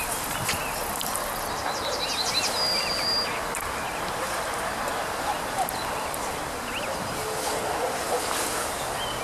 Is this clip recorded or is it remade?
recorded